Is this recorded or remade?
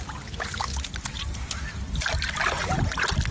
recorded